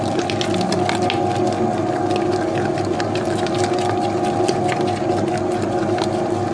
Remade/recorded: recorded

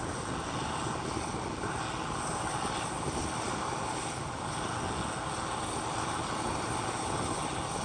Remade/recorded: recorded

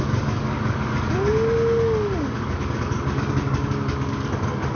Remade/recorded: remade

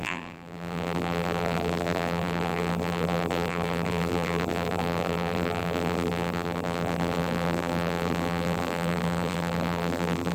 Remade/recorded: remade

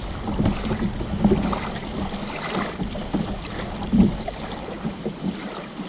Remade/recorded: recorded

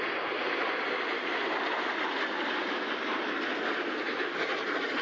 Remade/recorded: recorded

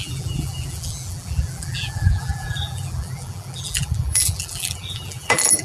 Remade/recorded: remade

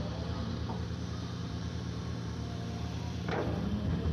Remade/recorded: remade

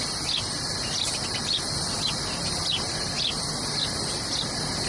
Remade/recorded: recorded